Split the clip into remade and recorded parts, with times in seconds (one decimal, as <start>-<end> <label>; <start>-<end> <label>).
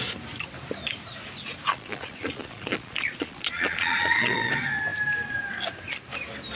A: 0.0-1.7 recorded; 1.7-4.5 remade; 4.5-6.5 recorded